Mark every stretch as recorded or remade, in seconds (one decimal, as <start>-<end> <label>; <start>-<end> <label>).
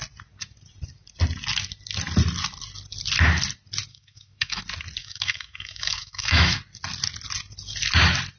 0.0-3.9 recorded; 3.9-4.6 remade; 4.6-5.0 recorded; 5.0-6.6 remade; 6.6-8.4 recorded